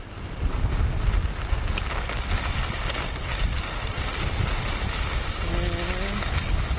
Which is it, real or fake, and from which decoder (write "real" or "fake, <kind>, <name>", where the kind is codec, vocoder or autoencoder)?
real